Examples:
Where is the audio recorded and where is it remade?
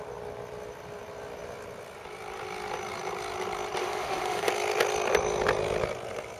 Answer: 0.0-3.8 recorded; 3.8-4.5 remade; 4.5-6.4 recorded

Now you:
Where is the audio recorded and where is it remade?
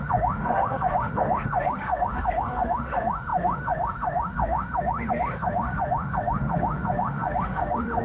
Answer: 0.0-8.0 remade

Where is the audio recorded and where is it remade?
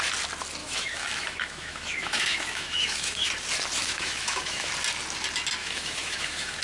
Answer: 0.0-0.6 recorded; 0.6-3.3 remade; 3.3-3.8 recorded; 3.8-4.7 remade; 4.7-5.6 recorded; 5.6-6.6 remade